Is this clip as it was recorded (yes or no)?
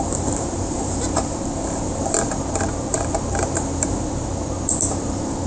no